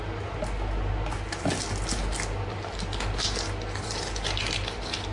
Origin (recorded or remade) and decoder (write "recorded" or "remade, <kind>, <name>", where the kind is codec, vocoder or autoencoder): recorded